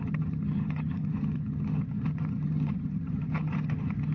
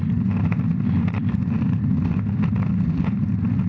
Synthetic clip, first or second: first